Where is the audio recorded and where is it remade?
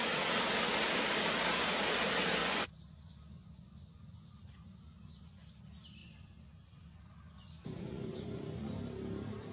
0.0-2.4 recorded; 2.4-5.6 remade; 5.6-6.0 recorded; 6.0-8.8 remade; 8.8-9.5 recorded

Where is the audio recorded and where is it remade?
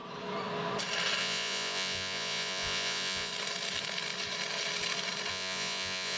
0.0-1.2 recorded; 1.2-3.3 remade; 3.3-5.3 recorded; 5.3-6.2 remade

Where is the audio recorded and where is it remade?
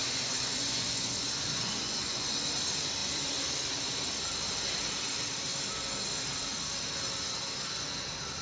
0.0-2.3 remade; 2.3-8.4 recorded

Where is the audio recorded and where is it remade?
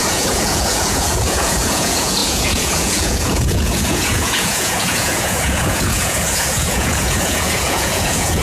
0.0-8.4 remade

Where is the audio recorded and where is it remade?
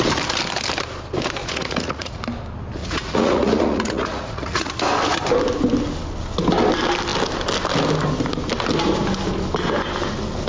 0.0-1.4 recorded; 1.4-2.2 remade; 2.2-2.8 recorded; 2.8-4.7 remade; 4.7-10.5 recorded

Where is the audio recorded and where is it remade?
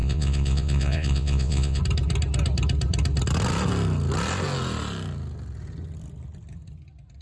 0.0-1.8 remade; 1.8-7.2 recorded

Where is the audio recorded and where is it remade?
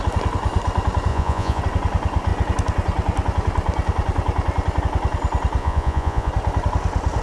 0.0-1.1 recorded; 1.1-1.6 remade; 1.6-5.6 recorded; 5.6-6.3 remade; 6.3-7.2 recorded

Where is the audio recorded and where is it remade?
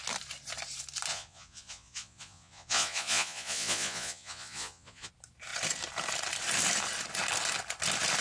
0.0-1.1 recorded; 1.1-5.1 remade; 5.1-8.2 recorded